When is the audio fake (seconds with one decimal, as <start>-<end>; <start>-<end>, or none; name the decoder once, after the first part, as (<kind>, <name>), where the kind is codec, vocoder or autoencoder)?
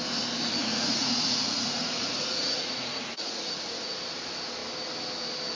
0.6-3.9 (vocoder, Vocos)